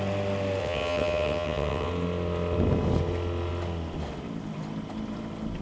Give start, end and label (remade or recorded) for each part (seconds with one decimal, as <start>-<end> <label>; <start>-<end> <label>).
0.0-0.6 recorded; 0.6-1.9 remade; 1.9-5.6 recorded